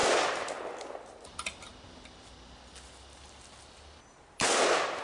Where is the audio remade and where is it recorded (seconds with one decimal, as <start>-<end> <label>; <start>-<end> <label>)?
0.0-1.7 remade; 1.7-5.0 recorded